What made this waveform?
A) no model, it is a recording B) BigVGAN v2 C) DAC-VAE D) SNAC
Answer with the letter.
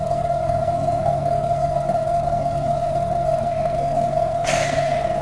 D